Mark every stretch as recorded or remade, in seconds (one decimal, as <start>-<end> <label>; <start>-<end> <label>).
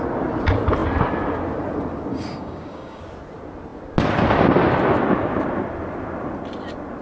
0.0-2.1 recorded; 2.1-3.0 remade; 3.0-7.0 recorded